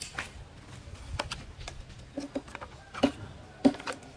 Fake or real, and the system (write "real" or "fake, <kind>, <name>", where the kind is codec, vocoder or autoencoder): real